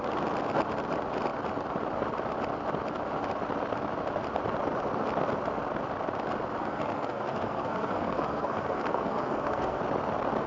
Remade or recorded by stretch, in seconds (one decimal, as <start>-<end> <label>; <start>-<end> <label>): 0.0-6.6 recorded; 6.6-9.8 remade; 9.8-10.5 recorded